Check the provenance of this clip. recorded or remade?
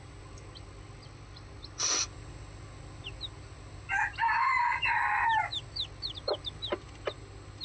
recorded